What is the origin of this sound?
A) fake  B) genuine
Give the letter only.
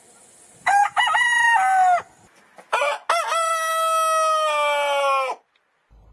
B